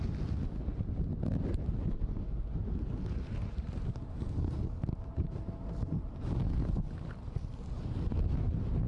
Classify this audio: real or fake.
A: real